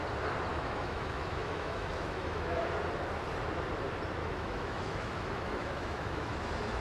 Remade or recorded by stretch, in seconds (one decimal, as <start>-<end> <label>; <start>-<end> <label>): 0.0-0.5 recorded; 0.5-2.6 remade; 2.6-4.2 recorded; 4.2-6.8 remade